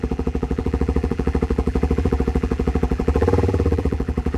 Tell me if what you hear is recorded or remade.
remade